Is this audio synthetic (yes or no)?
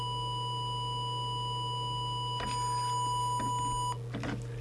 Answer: no